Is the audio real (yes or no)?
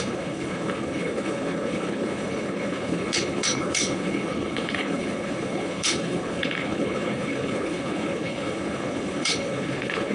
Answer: no